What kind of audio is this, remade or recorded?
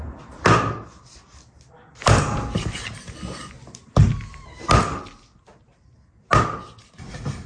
recorded